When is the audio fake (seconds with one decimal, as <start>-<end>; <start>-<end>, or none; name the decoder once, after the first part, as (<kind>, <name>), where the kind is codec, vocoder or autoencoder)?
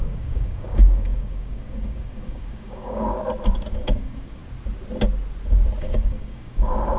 0.0-3.2 (codec, DAC); 3.7-4.4; 5.8-7.0